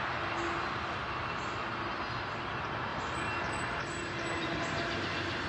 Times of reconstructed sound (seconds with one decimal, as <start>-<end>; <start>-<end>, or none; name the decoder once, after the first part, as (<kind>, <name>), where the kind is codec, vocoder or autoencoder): none